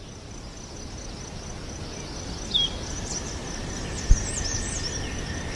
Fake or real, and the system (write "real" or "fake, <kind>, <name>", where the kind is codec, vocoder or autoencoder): real